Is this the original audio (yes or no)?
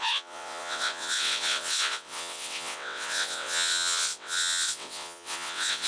no